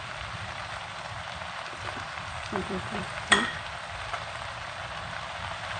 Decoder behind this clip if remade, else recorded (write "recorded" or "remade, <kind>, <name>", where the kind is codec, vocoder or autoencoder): remade, vocoder, BigVGAN v2